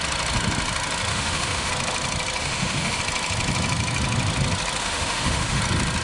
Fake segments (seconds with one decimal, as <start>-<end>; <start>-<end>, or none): 1.1-1.7; 2.4-3.0; 4.8-5.6